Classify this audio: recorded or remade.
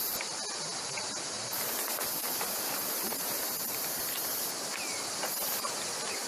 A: recorded